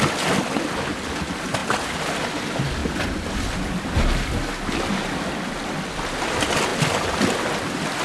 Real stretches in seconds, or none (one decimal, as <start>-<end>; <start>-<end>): 0.0-8.0